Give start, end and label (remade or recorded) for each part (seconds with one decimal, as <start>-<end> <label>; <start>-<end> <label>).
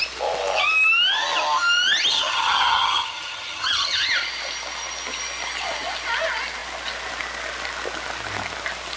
0.0-2.1 recorded; 2.1-4.1 remade; 4.1-9.0 recorded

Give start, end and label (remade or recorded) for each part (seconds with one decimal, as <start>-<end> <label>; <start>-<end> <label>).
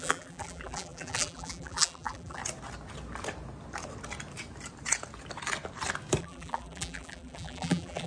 0.0-2.4 remade; 2.4-6.2 recorded; 6.2-8.1 remade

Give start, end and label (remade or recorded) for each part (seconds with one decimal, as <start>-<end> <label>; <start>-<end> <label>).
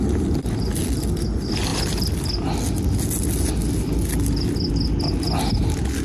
0.0-6.0 recorded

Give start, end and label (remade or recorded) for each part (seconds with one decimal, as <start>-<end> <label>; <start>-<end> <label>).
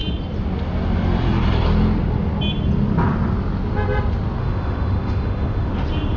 0.0-4.4 recorded; 4.4-5.7 remade; 5.7-6.2 recorded